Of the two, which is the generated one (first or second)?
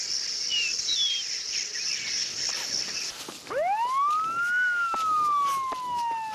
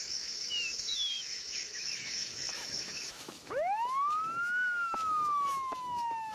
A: second